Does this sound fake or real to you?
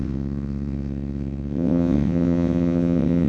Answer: fake